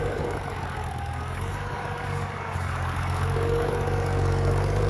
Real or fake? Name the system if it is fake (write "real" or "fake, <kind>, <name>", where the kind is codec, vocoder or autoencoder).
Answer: fake, codec, DAC